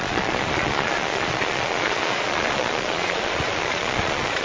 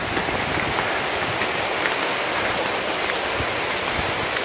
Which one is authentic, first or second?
second